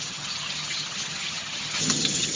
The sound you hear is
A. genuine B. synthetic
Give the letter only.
B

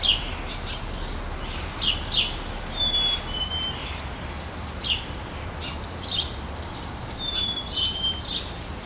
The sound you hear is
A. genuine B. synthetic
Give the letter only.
A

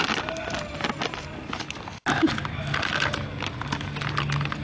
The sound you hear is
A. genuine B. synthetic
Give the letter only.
A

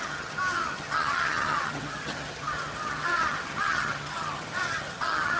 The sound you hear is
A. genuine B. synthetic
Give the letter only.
B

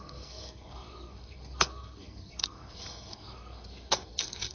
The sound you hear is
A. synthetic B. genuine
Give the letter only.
A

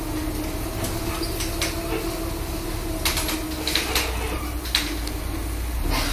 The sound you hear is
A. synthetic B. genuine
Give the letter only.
B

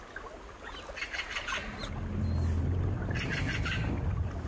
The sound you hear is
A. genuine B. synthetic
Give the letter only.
A